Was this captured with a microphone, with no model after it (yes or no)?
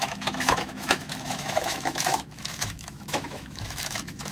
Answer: no